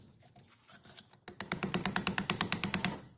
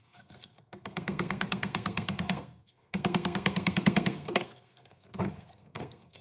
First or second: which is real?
first